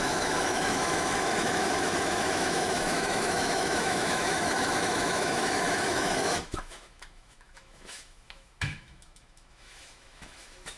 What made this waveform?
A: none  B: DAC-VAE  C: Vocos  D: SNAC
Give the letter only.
B